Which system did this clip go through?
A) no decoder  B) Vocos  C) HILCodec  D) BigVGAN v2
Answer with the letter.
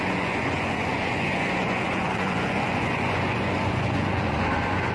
B